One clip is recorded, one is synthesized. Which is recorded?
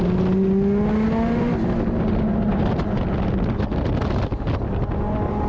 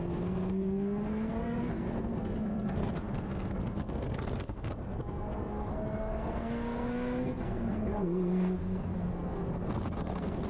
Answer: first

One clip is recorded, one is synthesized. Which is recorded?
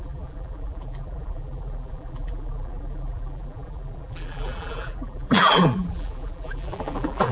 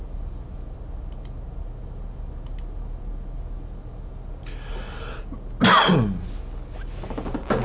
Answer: second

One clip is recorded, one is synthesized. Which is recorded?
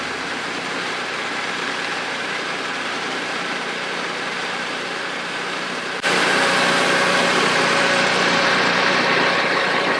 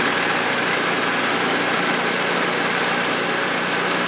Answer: second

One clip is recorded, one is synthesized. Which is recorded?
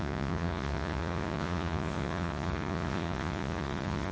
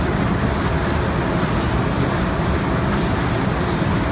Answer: second